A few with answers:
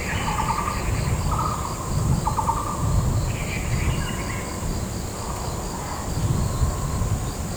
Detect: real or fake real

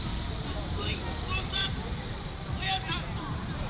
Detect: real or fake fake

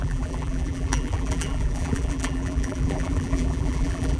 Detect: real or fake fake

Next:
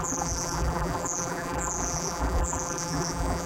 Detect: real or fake fake